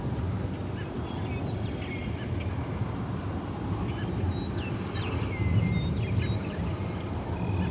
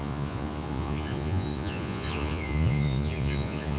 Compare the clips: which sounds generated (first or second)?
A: second